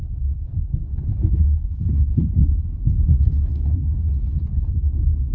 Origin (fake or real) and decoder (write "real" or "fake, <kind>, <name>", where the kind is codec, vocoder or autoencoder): fake, codec, HILCodec